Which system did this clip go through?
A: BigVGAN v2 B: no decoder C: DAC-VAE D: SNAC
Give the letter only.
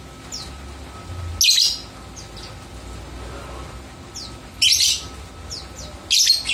B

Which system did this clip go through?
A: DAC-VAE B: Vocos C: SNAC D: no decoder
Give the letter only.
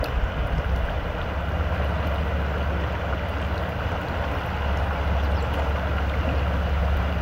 D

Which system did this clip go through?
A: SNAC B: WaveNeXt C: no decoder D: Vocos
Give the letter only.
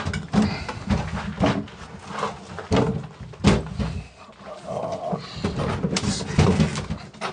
C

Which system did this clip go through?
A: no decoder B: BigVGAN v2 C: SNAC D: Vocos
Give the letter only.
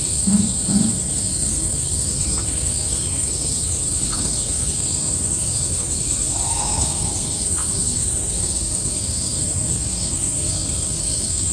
C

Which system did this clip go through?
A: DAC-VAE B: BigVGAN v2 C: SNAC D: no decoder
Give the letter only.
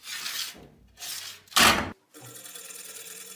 D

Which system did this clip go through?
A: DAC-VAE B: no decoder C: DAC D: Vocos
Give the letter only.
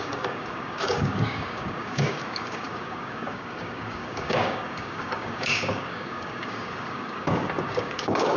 C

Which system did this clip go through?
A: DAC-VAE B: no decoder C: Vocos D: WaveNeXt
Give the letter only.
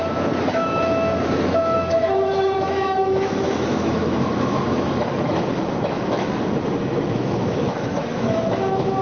A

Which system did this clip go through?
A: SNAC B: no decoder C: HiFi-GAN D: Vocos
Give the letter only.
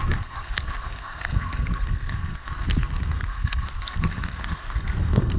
A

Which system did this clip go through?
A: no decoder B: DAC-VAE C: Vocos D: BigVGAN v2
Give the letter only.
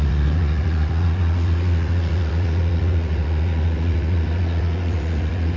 C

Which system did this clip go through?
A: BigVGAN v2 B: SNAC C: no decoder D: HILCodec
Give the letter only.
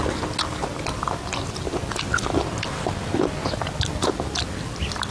C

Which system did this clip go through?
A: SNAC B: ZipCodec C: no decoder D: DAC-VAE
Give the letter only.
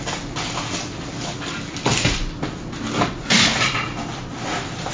C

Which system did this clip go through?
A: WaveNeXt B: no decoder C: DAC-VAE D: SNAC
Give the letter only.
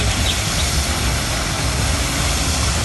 B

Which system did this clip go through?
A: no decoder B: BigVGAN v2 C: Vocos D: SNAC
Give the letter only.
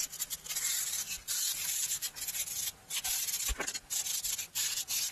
A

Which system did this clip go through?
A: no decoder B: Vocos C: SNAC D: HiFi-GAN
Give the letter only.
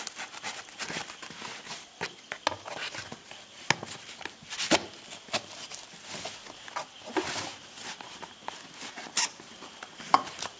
A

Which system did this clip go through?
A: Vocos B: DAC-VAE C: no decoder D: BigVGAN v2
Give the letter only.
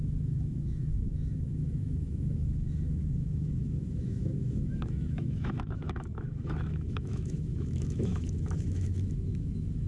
B